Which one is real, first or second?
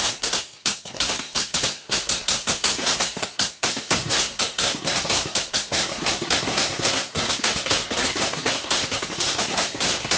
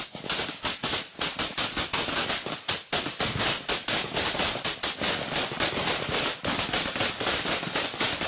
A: second